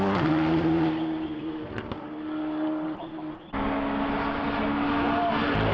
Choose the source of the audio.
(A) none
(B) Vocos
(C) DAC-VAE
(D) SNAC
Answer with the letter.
A